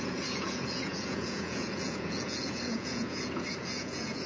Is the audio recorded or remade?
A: remade